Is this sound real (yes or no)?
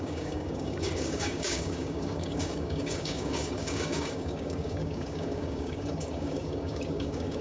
no